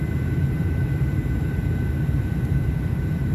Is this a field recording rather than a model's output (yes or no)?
no